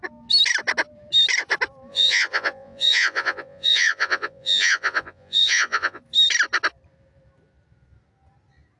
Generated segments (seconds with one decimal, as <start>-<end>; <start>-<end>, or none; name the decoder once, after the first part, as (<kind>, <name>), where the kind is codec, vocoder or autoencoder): 1.9-6.0 (vocoder, Vocos)